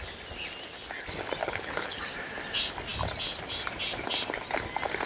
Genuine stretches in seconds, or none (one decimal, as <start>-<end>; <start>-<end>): 0.0-1.4; 2.0-5.1